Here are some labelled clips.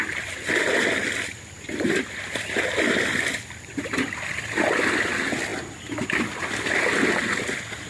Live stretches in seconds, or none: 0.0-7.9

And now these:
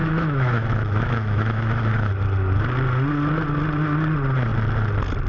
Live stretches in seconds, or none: 2.1-5.3

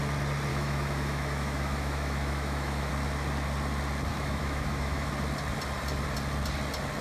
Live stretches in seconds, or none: 0.0-0.5; 2.9-4.1; 5.1-7.0

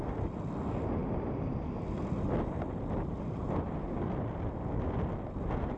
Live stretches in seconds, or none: 0.0-5.8

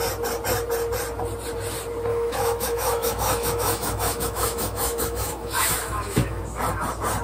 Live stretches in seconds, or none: 0.0-2.1; 6.4-7.2